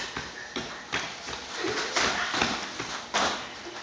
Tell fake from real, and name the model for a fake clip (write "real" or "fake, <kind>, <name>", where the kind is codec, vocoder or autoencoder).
fake, vocoder, BigVGAN v2